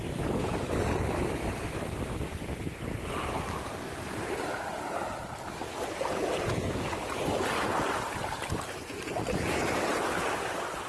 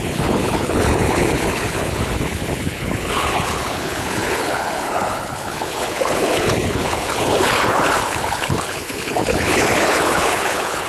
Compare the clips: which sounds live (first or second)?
first